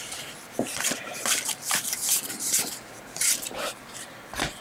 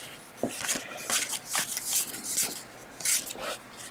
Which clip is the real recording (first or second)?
second